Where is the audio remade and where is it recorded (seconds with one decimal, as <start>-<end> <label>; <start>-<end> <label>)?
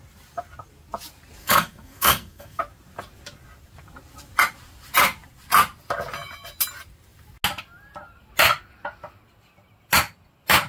0.0-1.4 recorded; 1.4-2.6 remade; 2.6-10.7 recorded